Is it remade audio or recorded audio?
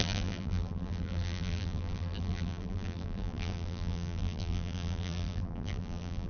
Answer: remade